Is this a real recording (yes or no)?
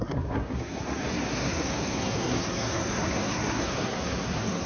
no